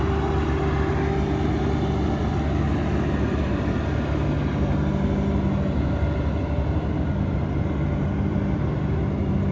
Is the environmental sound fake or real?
real